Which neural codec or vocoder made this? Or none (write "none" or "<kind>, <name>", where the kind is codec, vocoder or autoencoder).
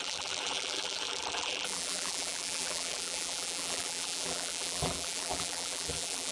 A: vocoder, BigVGAN v2